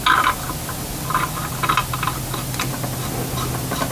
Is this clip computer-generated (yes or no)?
no